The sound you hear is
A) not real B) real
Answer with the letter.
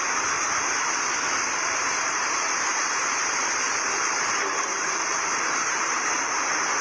A